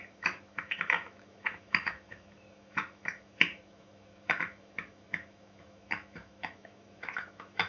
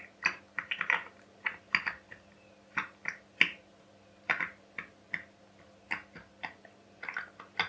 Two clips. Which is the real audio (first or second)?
second